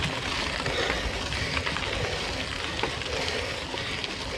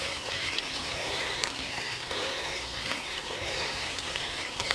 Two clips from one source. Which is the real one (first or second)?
first